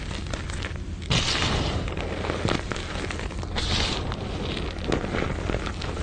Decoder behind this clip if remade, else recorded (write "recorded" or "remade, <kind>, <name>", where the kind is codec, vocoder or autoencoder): recorded